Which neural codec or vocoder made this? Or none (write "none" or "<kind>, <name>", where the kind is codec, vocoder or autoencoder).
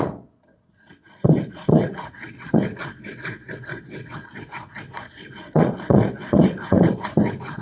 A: vocoder, Vocos